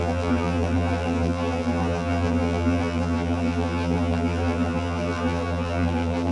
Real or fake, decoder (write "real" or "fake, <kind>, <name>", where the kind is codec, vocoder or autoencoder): fake, vocoder, BigVGAN v2